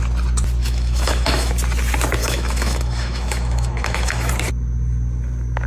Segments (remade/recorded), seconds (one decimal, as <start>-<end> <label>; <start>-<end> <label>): 0.0-0.6 recorded; 0.6-1.5 remade; 1.5-2.2 recorded; 2.2-4.3 remade; 4.3-5.7 recorded